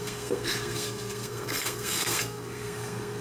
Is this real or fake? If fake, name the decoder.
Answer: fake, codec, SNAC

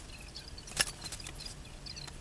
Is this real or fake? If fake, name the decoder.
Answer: real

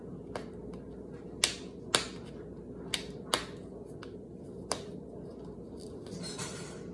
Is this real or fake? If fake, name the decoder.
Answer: real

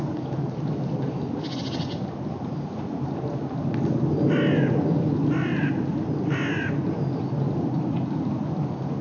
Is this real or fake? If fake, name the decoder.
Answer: real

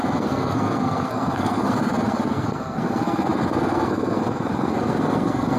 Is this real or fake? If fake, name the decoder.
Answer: fake, codec, SNAC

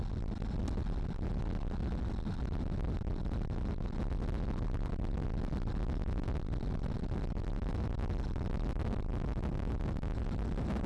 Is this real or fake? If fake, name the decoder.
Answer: real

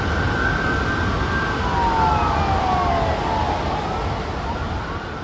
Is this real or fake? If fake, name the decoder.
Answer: real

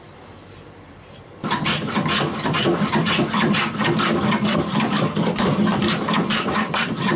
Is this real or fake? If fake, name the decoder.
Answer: fake, vocoder, BigVGAN v2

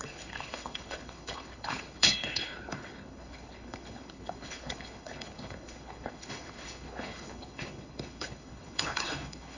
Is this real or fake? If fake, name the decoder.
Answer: fake, codec, HILCodec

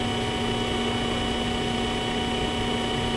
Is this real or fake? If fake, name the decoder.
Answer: real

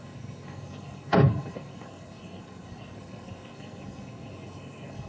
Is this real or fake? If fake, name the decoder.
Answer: fake, codec, SNAC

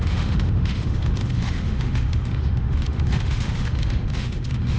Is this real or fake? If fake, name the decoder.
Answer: fake, autoencoder, DAC-VAE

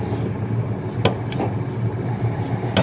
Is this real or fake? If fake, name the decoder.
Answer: real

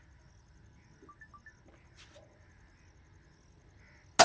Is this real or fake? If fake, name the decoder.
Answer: real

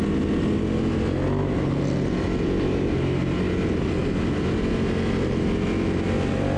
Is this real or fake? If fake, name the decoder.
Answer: real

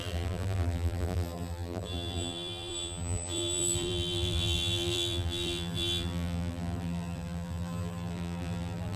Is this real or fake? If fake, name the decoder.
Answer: fake, vocoder, BigVGAN v2